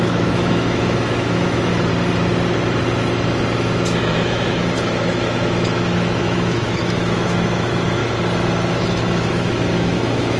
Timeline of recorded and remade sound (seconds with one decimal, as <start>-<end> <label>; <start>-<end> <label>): 0.0-1.9 remade; 1.9-4.0 recorded; 4.0-8.0 remade; 8.0-8.7 recorded; 8.7-10.4 remade